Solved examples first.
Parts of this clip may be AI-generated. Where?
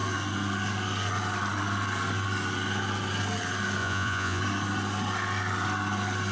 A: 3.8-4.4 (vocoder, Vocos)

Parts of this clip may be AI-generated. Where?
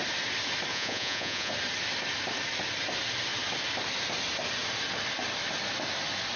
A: 0.7-1.5 (vocoder, Vocos)